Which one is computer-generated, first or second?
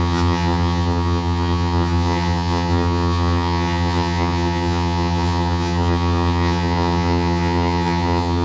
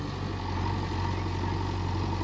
first